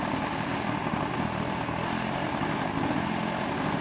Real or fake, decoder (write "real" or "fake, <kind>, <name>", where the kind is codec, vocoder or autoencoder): real